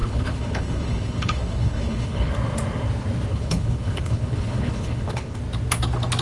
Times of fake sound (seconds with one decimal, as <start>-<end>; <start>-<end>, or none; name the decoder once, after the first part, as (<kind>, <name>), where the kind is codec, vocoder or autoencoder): 0.0-2.3 (codec, HILCodec); 3.3-5.4